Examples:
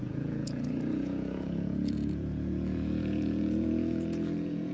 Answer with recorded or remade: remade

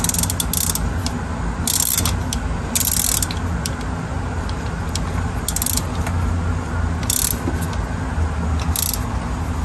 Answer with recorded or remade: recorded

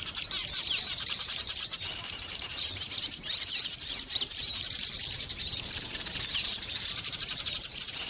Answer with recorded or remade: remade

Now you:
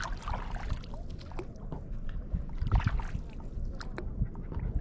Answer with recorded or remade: recorded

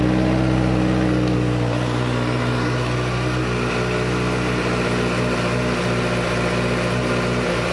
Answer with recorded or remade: recorded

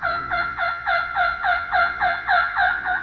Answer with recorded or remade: remade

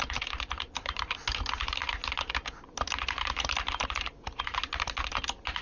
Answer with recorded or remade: recorded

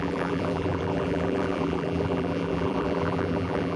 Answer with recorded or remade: remade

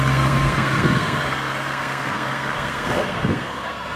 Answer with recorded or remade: remade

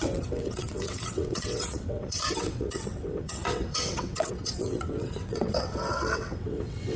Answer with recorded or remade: remade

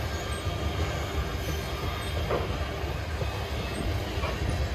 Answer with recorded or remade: recorded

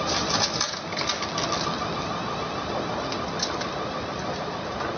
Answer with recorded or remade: recorded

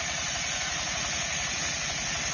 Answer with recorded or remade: remade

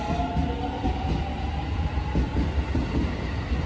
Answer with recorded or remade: recorded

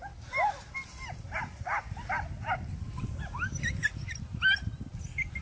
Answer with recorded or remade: recorded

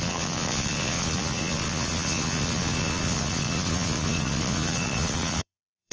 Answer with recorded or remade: remade